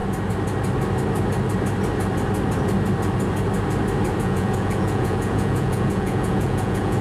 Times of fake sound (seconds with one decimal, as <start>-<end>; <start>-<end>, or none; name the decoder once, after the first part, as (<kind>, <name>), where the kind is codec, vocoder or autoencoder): 4.2-7.0 (vocoder, Vocos)